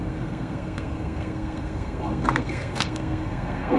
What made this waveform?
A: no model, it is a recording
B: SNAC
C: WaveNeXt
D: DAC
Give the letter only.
B